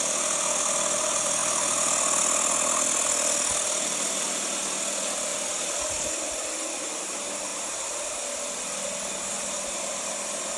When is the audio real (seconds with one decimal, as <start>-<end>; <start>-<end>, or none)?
0.0-10.6

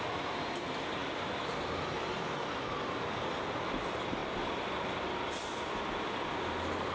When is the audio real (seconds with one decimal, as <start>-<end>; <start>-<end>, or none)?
0.0-6.9

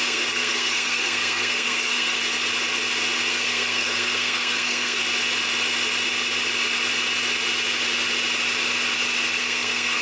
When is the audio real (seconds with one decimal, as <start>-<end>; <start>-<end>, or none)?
2.2-3.3; 5.0-9.4

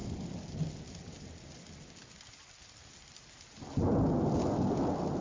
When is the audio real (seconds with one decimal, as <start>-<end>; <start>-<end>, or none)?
0.0-5.2